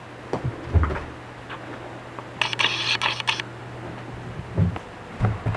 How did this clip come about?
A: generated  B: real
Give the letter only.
B